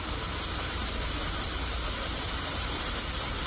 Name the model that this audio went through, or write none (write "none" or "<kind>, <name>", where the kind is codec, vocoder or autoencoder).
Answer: none